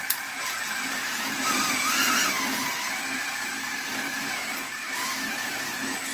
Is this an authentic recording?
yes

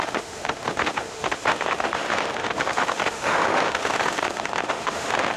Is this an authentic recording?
no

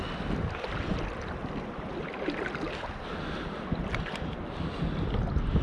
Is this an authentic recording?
yes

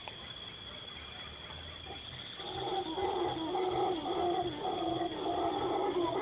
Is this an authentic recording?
yes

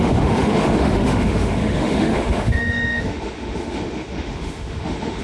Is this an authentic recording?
no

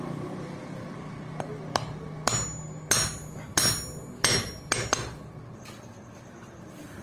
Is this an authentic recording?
yes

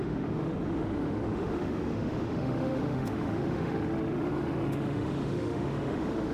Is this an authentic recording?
no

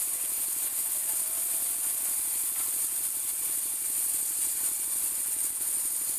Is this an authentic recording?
yes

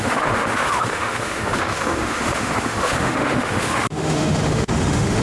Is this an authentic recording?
no